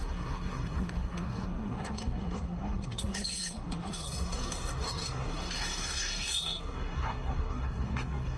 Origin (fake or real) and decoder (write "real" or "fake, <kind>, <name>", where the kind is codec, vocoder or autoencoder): fake, codec, SNAC